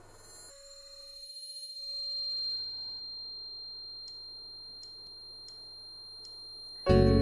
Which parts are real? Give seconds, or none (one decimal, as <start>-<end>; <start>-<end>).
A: 0.0-0.5; 3.0-7.2